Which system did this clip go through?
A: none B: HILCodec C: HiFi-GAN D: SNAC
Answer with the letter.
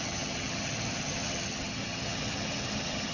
C